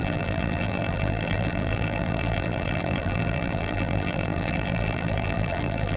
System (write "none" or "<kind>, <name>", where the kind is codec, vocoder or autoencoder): vocoder, BigVGAN v2